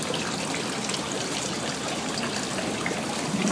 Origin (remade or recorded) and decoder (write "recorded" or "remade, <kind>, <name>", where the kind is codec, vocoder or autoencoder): recorded